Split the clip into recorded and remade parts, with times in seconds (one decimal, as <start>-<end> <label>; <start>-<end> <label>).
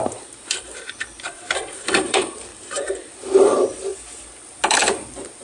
0.0-3.9 remade; 3.9-5.4 recorded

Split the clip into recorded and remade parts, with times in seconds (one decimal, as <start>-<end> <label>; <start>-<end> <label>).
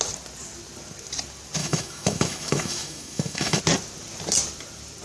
0.0-1.6 recorded; 1.6-3.6 remade; 3.6-5.0 recorded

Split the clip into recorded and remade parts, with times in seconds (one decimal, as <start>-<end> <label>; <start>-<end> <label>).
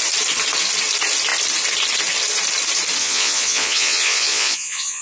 0.0-3.0 recorded; 3.0-5.0 remade